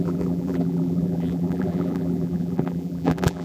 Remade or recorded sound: remade